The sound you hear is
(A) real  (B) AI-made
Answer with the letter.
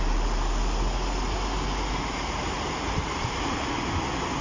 A